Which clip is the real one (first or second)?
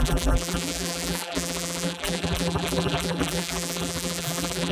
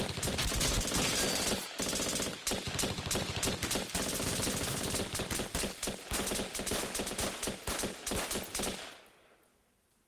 second